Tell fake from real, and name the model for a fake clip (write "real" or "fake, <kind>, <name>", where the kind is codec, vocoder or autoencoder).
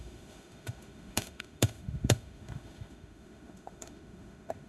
fake, autoencoder, DAC-VAE